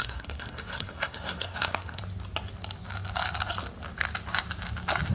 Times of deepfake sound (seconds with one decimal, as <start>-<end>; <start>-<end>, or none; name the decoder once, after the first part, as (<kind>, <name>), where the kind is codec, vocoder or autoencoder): 0.0-2.0 (codec, SNAC)